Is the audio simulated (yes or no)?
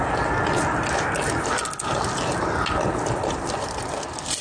no